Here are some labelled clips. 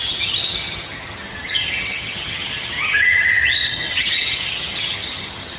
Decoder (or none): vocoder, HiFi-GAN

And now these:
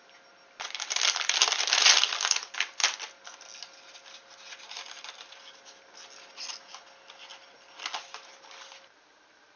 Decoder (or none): none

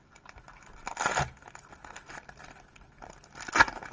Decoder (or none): none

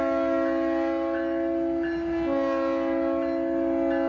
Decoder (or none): none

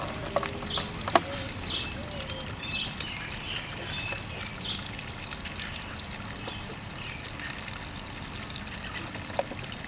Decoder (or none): none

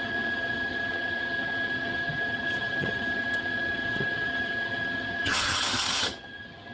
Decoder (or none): vocoder, HiFi-GAN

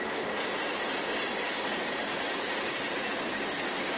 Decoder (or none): none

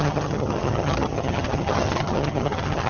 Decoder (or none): vocoder, HiFi-GAN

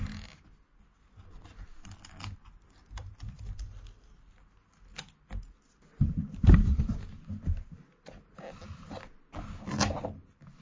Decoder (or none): none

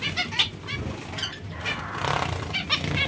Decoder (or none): none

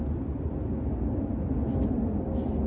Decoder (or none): none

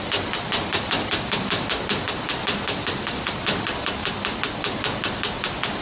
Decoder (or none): none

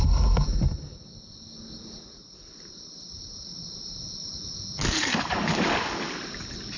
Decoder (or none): none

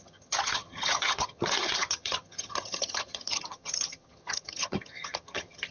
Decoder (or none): vocoder, HiFi-GAN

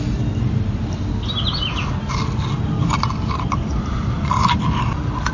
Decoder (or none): none